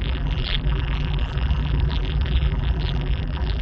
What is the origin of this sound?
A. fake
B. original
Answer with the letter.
A